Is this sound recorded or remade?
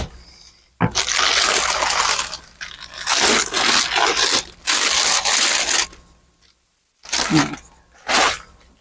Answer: recorded